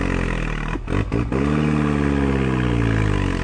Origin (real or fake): real